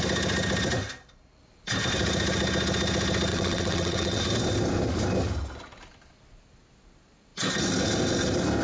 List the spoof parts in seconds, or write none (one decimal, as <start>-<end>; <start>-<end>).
3.3-4.2